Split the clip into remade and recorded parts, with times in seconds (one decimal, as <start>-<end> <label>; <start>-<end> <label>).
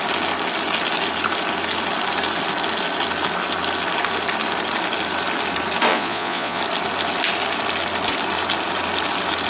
0.0-5.9 recorded; 5.9-6.6 remade; 6.6-9.5 recorded